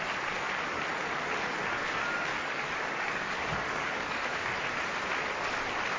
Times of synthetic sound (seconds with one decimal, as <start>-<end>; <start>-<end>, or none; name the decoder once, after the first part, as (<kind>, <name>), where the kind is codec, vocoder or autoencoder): 2.3-4.6 (codec, DAC)